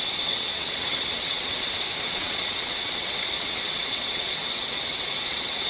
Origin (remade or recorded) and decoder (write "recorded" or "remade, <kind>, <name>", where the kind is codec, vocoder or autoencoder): remade, vocoder, WaveNeXt